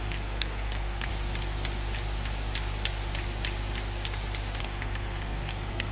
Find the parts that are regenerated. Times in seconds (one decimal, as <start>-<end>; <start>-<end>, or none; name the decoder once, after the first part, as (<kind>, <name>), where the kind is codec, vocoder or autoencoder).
0.0-1.1 (codec, SNAC); 4.6-5.9